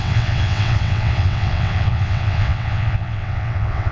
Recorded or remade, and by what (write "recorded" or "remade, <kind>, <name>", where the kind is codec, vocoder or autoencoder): remade, vocoder, WaveNeXt